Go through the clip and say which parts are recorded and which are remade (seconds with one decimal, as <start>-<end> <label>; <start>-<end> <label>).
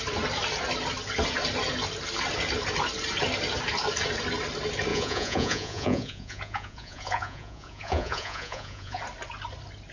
0.0-4.9 recorded; 4.9-9.0 remade; 9.0-9.9 recorded